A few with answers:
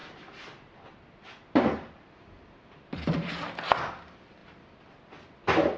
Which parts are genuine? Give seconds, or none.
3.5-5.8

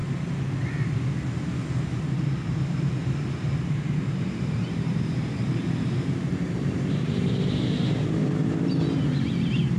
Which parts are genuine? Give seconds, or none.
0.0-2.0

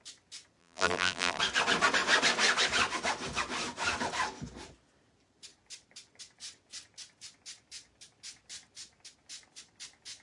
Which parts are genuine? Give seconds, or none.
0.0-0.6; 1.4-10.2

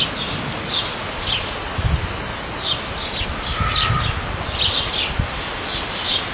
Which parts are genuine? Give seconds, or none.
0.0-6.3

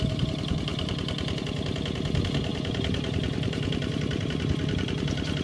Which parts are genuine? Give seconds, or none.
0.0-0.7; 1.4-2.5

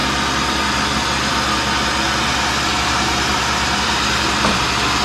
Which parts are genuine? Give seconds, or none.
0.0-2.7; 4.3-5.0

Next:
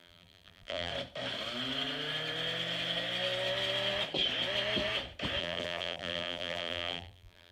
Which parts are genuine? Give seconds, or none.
0.9-5.4